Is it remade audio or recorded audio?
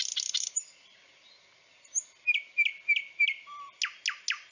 recorded